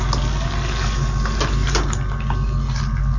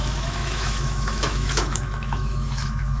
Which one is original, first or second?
first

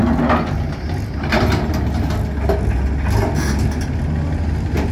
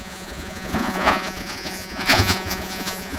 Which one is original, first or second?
first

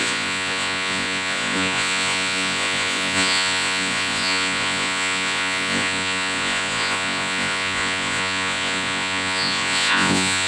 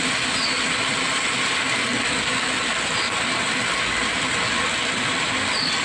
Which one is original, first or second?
second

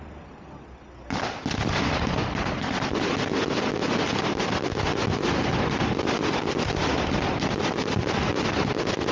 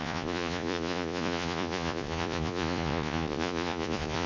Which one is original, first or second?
first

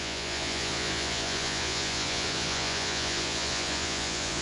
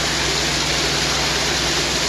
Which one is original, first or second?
second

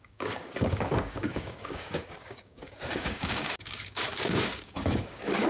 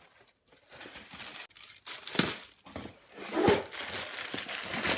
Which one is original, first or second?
second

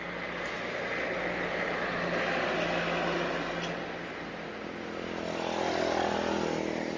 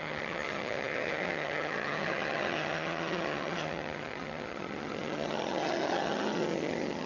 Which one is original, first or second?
first